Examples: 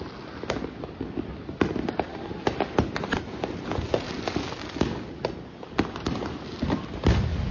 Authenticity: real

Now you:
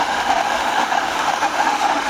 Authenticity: fake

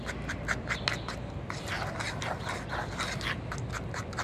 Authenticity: real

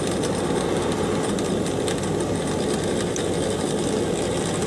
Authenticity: real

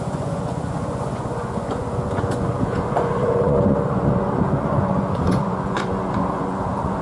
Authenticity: fake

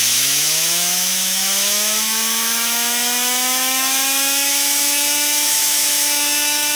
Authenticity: fake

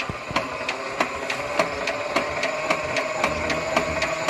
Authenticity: real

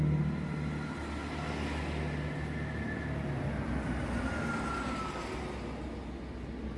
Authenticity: real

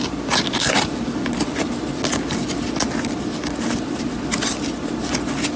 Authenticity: real